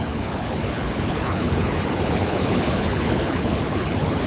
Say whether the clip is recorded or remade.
remade